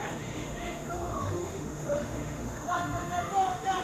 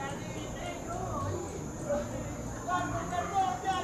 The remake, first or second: first